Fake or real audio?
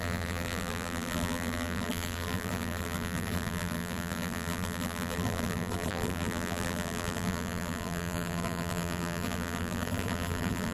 fake